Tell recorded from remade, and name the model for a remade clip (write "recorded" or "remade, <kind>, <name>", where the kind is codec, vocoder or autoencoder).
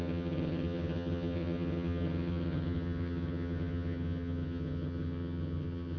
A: remade, vocoder, HiFi-GAN